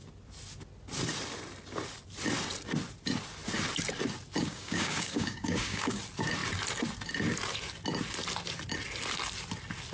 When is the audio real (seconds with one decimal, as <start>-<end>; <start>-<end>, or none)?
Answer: 0.0-4.4; 6.0-9.9